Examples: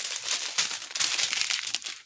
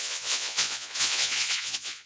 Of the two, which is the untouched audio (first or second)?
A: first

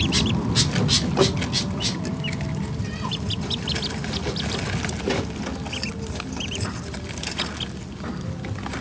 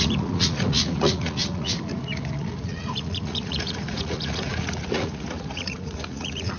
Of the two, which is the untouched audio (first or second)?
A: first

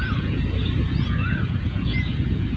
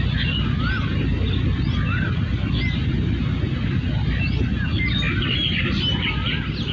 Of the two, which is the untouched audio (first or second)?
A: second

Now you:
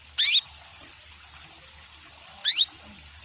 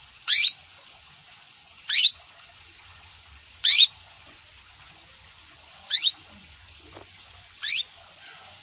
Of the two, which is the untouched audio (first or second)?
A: first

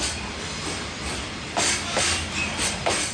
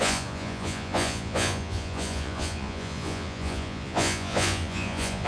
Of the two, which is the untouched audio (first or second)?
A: first